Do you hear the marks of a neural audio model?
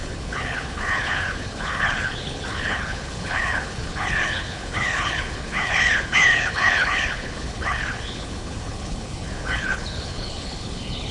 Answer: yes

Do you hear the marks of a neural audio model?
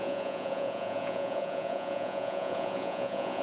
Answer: yes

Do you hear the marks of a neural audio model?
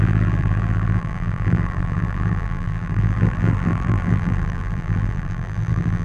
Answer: yes